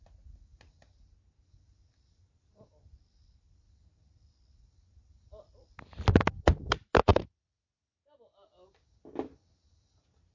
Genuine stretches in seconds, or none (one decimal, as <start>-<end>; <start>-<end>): 0.0-10.3